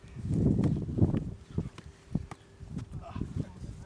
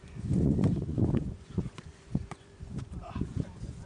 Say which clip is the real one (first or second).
first